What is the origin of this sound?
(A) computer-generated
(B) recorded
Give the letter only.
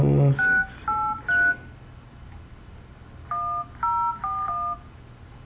B